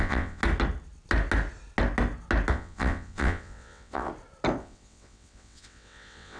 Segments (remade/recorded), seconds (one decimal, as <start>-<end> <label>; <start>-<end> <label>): 0.0-0.4 remade; 0.4-2.5 recorded; 2.5-4.1 remade; 4.1-4.6 recorded; 4.6-6.4 remade